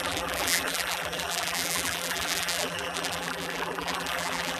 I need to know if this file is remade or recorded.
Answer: remade